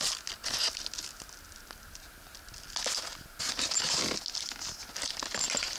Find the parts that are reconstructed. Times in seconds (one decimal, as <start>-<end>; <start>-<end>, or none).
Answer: none